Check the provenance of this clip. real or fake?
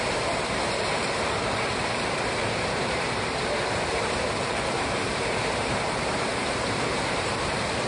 fake